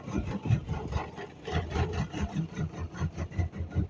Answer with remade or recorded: remade